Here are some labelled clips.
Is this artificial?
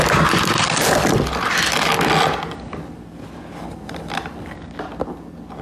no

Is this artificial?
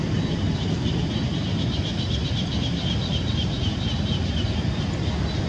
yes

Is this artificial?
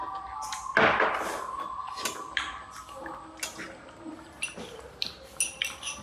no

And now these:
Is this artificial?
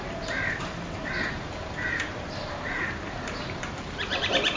yes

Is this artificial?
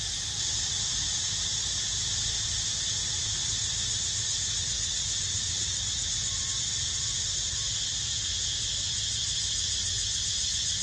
no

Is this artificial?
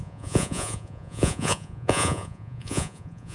yes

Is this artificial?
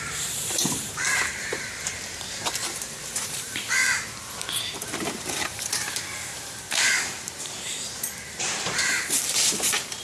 yes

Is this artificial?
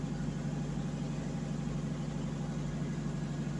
no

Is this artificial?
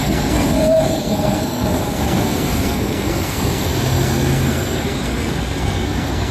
yes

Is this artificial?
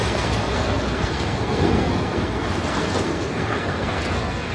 yes